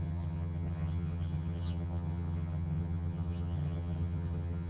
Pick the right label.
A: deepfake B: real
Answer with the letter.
A